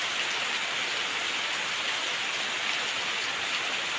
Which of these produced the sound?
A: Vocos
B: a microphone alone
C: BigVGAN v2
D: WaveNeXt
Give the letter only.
B